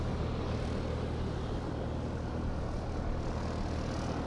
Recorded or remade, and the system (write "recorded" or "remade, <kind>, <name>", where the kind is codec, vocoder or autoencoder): recorded